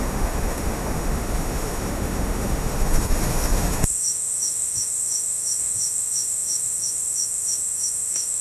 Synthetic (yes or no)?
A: yes